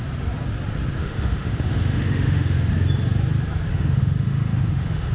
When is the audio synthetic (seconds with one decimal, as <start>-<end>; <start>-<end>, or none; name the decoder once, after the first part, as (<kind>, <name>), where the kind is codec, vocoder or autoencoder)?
1.0-2.7 (autoencoder, DAC-VAE); 3.7-5.1